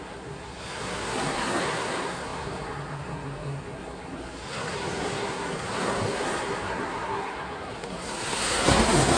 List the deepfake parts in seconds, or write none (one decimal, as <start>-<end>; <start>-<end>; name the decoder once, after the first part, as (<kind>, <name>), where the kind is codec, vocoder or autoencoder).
0.0-9.2 (codec, SNAC)